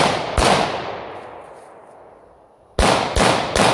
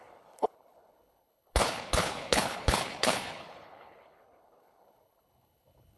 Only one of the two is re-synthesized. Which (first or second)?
second